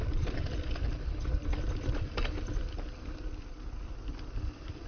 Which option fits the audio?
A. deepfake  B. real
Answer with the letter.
B